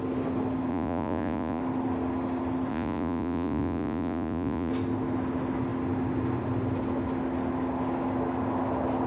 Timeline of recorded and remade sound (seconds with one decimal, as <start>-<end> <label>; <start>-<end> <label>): 0.0-0.7 recorded; 0.7-1.6 remade; 1.6-2.7 recorded; 2.7-4.7 remade; 4.7-9.1 recorded